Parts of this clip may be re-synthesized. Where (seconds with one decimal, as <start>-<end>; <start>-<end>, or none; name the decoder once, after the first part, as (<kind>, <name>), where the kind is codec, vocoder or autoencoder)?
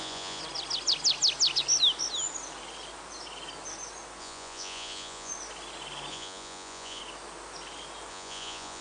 0.0-0.4 (vocoder, Vocos); 4.2-5.3; 6.1-7.0; 8.1-8.8